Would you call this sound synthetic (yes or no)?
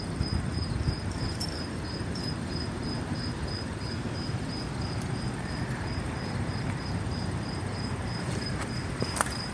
yes